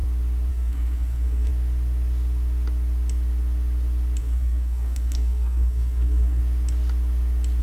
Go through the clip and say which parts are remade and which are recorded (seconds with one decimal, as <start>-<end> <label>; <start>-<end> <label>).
0.0-0.5 recorded; 0.5-1.5 remade; 1.5-4.2 recorded; 4.2-6.4 remade; 6.4-7.6 recorded